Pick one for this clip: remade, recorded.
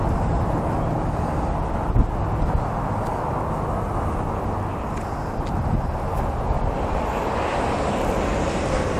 recorded